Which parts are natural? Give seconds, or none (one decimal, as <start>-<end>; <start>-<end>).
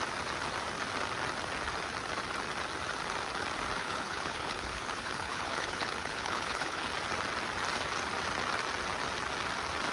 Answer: 0.0-3.8; 6.9-9.9